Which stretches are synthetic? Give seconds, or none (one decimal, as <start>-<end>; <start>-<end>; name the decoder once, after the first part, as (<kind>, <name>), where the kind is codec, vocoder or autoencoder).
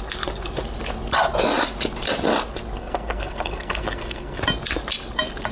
2.8-4.4 (codec, SNAC)